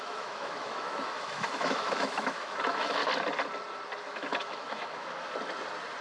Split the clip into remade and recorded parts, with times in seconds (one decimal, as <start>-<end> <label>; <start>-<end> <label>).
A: 0.0-3.0 remade; 3.0-4.0 recorded; 4.0-5.3 remade; 5.3-6.0 recorded